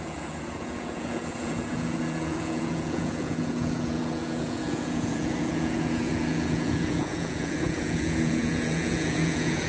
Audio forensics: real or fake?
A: fake